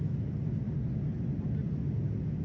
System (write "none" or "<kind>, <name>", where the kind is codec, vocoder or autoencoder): none